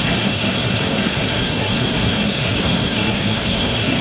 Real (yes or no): no